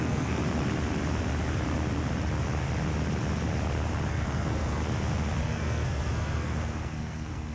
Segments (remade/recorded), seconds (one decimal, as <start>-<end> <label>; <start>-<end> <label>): 0.0-0.4 remade; 0.4-4.1 recorded; 4.1-4.8 remade; 4.8-5.4 recorded; 5.4-7.5 remade